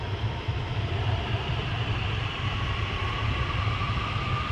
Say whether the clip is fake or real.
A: fake